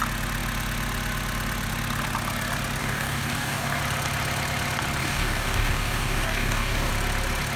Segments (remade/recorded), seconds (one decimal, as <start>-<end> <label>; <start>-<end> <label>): 0.0-2.8 recorded; 2.8-3.8 remade; 3.8-5.0 recorded; 5.0-6.9 remade; 6.9-7.6 recorded